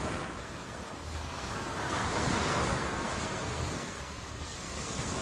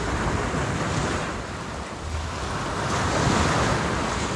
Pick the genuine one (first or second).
second